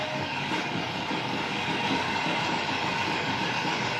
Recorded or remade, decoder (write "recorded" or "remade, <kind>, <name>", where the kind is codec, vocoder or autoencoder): remade, codec, DAC